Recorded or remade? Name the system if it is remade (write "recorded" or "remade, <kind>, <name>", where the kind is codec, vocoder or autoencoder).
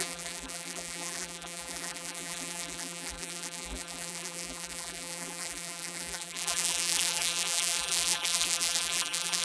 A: remade, vocoder, BigVGAN v2